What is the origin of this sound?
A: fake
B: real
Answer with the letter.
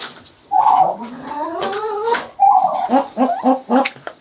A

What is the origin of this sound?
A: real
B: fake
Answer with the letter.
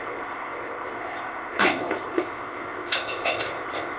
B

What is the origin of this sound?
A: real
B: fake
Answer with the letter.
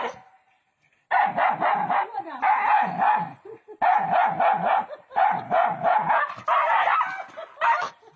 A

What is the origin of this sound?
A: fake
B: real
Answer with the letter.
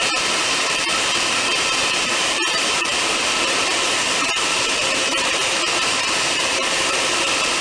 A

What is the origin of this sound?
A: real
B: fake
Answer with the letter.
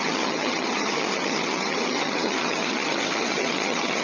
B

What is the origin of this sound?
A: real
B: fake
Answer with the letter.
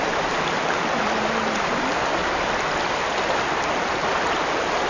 A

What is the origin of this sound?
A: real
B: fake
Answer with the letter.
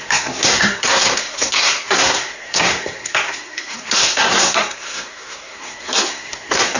B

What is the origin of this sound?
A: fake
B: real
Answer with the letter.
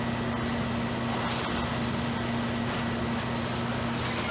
B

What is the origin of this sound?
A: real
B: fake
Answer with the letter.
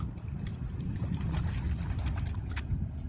A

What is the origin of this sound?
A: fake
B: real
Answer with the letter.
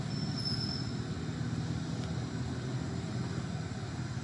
B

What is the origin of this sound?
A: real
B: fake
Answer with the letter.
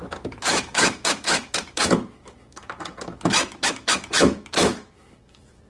B